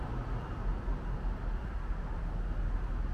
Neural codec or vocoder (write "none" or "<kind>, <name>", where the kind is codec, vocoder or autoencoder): none